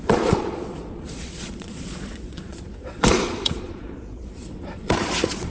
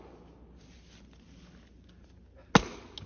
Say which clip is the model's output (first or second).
first